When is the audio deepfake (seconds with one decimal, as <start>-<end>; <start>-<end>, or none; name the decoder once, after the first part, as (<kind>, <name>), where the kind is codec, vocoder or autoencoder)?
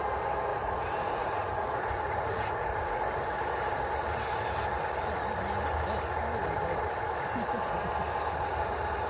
0.5-3.0 (vocoder, Vocos)